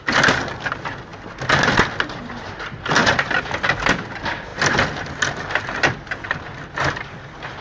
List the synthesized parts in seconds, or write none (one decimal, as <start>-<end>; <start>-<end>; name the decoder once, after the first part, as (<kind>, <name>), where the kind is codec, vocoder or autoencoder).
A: 3.0-3.9 (vocoder, BigVGAN v2)